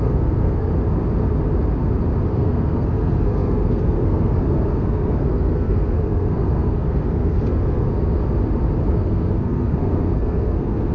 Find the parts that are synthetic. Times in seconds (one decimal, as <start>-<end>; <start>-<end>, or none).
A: 0.0-0.7; 2.3-8.2; 8.9-10.9

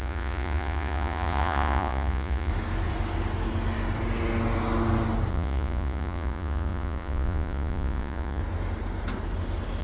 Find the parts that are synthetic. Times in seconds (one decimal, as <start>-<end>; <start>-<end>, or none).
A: 0.0-2.5; 5.3-8.4

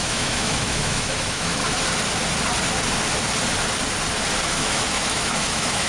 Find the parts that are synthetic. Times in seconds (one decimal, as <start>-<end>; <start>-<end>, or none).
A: 0.0-1.6; 4.4-5.9

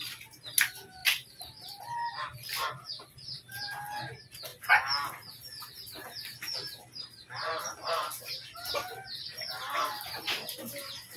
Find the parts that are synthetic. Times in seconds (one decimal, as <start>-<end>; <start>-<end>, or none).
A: 1.0-1.8